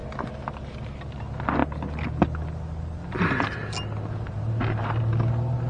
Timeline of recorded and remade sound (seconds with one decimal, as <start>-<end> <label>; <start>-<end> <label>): 0.0-5.7 recorded